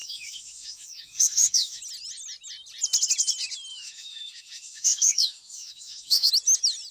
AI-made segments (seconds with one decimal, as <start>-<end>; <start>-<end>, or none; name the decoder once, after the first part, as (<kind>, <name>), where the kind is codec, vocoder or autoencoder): 0.0-1.8 (autoencoder, DAC-VAE); 3.7-6.3